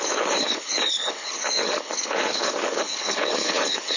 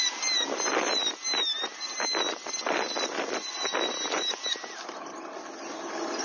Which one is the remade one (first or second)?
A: first